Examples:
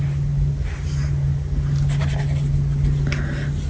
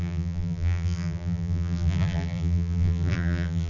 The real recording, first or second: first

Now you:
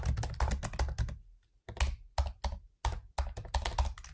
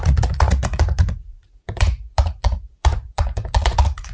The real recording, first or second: first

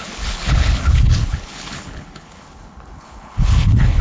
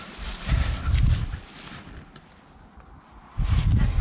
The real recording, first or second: second